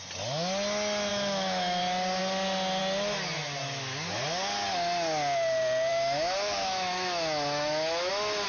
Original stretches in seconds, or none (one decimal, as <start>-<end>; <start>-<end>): 0.0-1.1; 1.8-5.9; 8.1-8.5